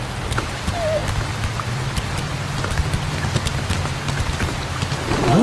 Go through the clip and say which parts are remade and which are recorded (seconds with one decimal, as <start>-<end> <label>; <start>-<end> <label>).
0.0-5.4 recorded